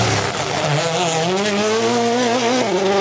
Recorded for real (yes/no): yes